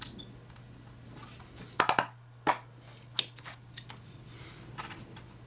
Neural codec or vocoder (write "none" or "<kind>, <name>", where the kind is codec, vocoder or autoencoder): none